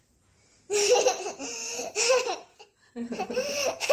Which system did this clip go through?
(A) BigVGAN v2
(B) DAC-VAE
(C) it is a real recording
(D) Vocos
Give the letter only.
A